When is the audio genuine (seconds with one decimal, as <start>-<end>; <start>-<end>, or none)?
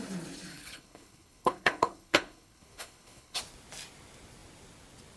0.0-0.5; 3.4-5.2